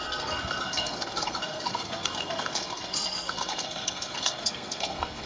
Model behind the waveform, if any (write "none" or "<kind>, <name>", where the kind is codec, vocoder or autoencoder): codec, SNAC